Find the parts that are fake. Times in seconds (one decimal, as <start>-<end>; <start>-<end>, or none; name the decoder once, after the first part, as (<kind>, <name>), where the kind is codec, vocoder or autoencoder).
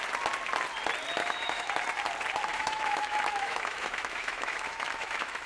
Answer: 1.2-1.7 (autoencoder, DAC-VAE); 2.5-5.5